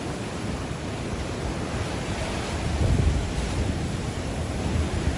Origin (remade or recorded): remade